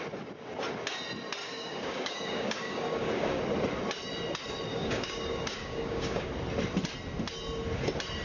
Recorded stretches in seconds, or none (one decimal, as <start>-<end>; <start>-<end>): 0.0-1.4; 3.4-4.7; 6.3-8.2